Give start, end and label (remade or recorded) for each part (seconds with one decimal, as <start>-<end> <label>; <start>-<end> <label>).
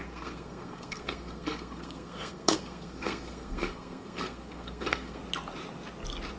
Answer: 0.0-5.2 remade; 5.2-6.4 recorded